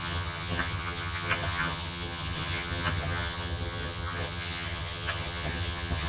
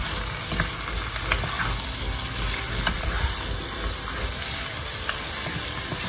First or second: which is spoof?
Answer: first